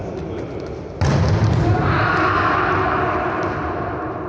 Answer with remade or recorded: recorded